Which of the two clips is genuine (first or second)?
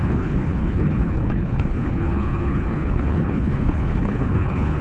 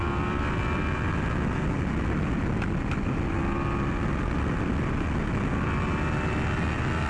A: second